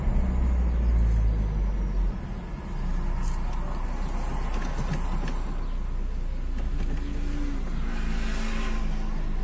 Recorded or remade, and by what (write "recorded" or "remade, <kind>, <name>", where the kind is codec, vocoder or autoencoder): recorded